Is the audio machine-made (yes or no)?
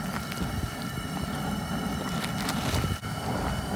no